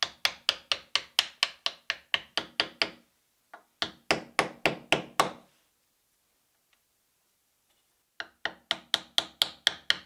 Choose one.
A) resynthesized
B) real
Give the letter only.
B